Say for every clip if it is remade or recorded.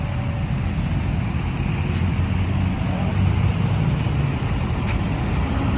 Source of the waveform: recorded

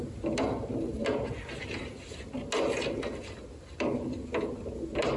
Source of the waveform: recorded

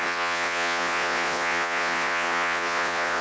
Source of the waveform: remade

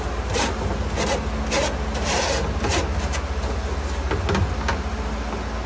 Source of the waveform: recorded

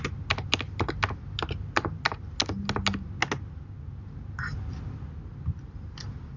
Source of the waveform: recorded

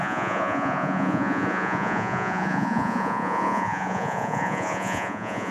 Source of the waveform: remade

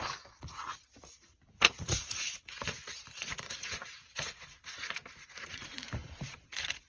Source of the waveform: remade